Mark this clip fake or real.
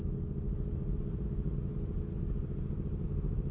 real